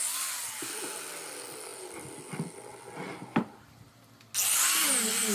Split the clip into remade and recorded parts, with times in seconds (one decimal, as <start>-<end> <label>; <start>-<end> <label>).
0.0-5.3 recorded